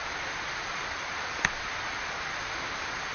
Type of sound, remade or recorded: recorded